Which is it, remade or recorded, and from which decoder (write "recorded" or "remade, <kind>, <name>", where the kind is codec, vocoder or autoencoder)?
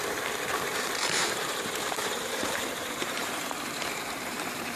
remade, vocoder, BigVGAN v2